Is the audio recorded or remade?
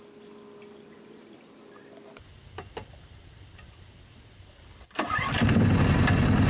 recorded